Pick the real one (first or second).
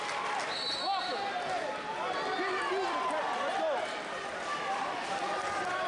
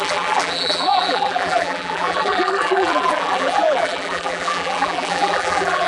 first